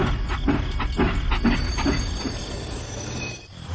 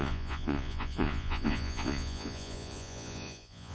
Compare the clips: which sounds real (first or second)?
first